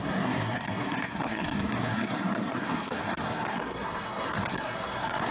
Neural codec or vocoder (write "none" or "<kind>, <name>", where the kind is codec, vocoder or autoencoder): codec, SNAC